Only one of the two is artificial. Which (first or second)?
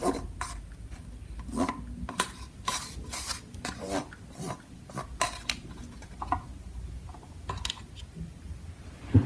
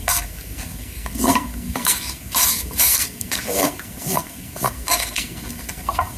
second